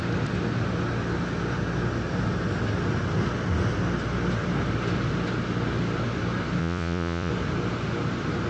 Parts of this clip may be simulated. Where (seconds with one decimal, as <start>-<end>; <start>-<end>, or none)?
6.6-7.3